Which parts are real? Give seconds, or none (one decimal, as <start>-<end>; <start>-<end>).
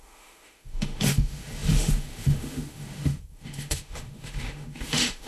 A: none